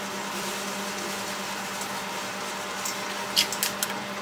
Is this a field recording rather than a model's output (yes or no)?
yes